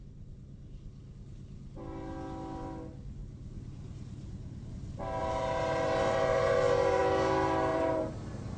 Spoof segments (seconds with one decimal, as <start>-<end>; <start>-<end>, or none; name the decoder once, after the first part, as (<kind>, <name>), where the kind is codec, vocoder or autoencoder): 3.2-4.7 (vocoder, BigVGAN v2); 5.2-7.0; 7.7-8.6